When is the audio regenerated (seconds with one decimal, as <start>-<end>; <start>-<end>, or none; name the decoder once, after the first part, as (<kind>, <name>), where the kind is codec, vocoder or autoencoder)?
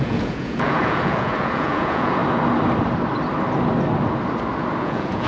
0.0-2.2 (vocoder, Vocos); 4.8-5.3